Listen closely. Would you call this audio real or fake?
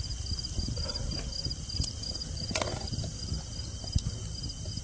real